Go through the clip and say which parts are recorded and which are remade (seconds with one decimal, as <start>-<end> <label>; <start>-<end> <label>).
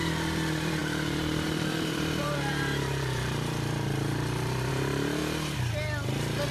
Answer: 0.0-5.2 remade; 5.2-6.5 recorded